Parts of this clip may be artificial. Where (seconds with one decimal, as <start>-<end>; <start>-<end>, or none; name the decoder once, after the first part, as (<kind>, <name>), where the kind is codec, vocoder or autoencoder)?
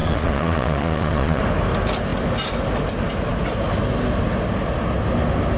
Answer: 0.0-1.4 (vocoder, Vocos)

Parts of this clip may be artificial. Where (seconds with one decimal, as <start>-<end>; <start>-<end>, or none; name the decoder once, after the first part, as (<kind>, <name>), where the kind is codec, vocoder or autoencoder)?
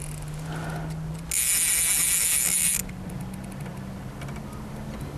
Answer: none